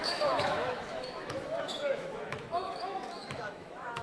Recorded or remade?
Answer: remade